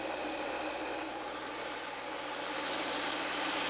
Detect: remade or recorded recorded